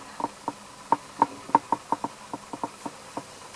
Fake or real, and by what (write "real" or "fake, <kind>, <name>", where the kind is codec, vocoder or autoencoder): real